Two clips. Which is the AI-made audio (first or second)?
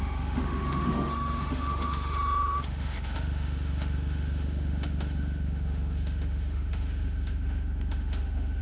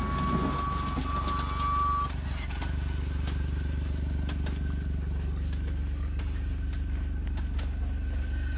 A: first